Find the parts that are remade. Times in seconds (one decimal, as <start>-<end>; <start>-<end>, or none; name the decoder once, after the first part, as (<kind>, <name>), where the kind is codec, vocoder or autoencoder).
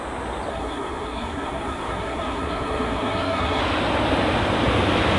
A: 0.5-3.6 (codec, SNAC)